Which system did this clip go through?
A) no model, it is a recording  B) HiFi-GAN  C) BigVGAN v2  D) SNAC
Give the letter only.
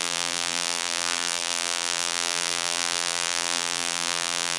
C